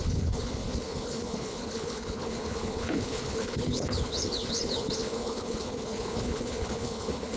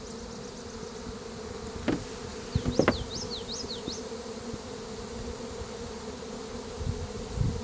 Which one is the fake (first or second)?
first